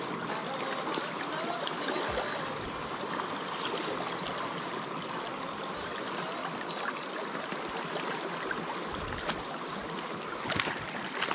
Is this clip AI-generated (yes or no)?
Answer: no